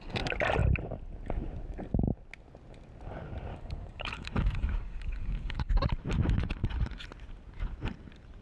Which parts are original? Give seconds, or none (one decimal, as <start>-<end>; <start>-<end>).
0.0-3.5; 5.7-8.4